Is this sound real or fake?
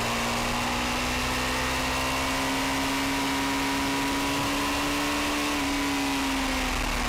real